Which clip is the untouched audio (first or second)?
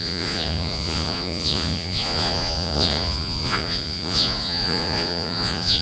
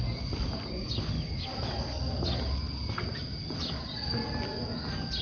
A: second